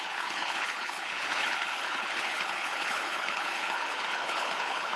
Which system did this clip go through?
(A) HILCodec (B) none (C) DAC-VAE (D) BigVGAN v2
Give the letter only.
A